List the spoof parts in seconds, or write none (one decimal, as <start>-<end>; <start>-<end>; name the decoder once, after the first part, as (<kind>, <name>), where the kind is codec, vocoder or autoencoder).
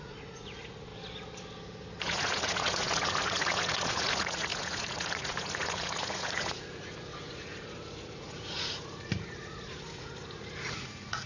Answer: 0.0-0.9 (vocoder, Vocos); 2.0-11.3